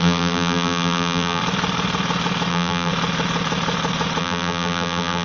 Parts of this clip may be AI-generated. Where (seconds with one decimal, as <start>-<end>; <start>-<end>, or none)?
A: 0.0-1.4; 2.5-2.9; 4.2-5.2

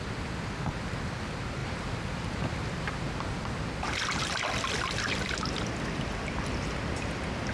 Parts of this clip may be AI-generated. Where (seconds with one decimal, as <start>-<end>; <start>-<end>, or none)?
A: 1.6-5.3

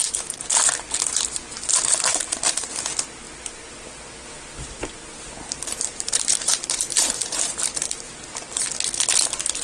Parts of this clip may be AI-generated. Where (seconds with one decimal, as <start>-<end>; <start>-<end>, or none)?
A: 2.1-2.7; 5.9-8.1

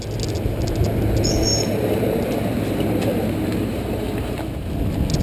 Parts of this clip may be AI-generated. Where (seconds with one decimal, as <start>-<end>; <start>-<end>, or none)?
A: 1.5-4.6